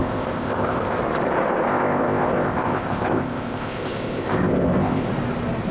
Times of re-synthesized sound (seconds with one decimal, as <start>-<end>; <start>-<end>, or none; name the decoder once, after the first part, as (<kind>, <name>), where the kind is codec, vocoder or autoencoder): 0.0-1.0 (codec, ZipCodec); 1.7-5.1